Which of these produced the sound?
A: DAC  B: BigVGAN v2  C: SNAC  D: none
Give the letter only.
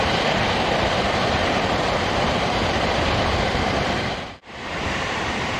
B